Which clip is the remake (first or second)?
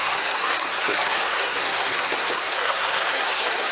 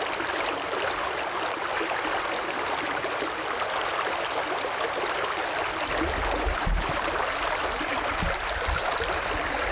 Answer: first